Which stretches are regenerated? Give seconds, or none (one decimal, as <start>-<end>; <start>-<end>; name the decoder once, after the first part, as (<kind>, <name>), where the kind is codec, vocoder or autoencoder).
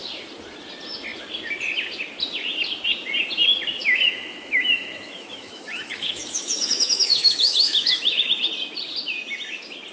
3.8-8.3 (autoencoder, DAC-VAE)